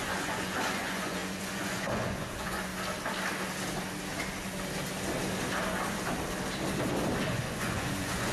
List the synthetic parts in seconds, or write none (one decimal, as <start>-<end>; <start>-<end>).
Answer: 0.0-2.7; 7.3-8.3